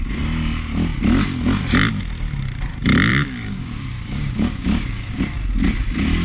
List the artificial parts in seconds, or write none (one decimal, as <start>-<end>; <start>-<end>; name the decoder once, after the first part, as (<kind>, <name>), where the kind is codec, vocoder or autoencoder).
3.1-5.2 (codec, DAC)

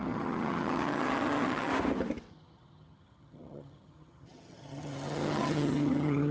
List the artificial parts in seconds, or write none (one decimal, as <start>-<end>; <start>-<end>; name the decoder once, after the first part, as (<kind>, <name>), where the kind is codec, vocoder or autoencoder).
0.0-1.7 (vocoder, HiFi-GAN); 2.3-6.3

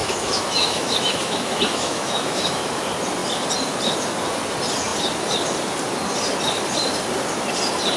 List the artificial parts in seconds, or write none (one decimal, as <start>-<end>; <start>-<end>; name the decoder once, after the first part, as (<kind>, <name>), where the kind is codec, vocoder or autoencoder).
0.0-2.7 (autoencoder, DAC-VAE)

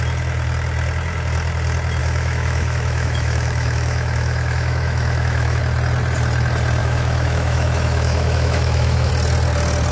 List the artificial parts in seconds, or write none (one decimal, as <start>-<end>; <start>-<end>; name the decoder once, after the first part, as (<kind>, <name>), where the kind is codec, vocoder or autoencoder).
2.0-5.6 (autoencoder, DAC-VAE); 6.8-9.1

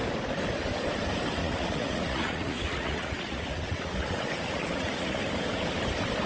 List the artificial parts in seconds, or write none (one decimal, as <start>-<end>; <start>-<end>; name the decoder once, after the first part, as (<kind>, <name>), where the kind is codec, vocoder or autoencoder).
1.4-5.2 (vocoder, Vocos)

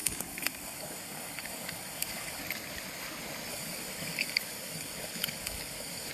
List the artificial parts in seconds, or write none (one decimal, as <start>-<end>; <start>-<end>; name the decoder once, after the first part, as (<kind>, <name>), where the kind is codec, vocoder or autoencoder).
0.0-2.4 (codec, DAC); 3.5-6.1

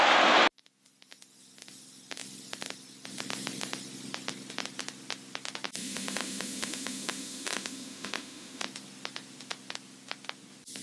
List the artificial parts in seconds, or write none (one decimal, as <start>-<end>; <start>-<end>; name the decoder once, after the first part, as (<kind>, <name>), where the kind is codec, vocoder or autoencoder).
5.8-8.6 (autoencoder, DAC-VAE)

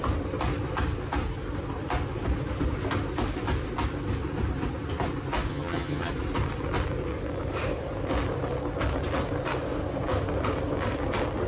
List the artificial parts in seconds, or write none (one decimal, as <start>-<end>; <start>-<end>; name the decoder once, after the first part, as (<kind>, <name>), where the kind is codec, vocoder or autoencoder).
5.5-6.1 (vocoder, HiFi-GAN)